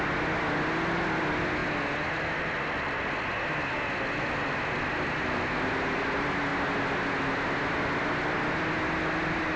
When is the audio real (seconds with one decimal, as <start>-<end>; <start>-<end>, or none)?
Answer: 0.0-9.6

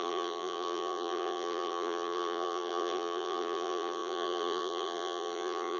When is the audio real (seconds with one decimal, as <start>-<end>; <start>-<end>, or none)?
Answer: none

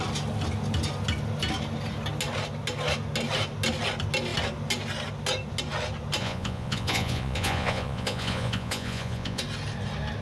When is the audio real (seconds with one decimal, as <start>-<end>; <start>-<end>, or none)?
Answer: 0.0-6.2; 9.4-10.2

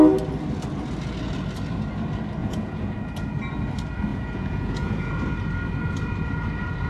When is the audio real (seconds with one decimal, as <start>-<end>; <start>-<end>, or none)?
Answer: 0.0-2.4; 2.9-4.1; 5.1-6.9

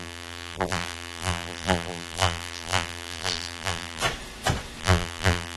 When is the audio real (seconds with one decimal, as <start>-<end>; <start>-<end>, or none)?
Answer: 4.0-4.8

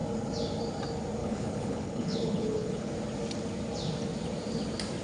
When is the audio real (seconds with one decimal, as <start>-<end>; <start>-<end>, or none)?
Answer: 0.0-1.2; 2.9-5.0

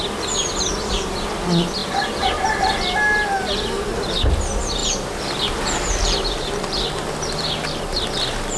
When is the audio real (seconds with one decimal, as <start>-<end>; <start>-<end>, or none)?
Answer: 0.0-1.8; 2.7-4.8; 7.8-8.6